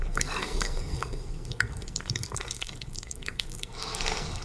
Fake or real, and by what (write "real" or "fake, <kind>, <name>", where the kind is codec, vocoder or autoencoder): fake, codec, SNAC